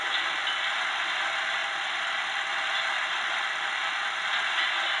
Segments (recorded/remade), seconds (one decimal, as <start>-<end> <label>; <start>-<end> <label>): 0.0-1.6 recorded; 1.6-4.6 remade; 4.6-5.0 recorded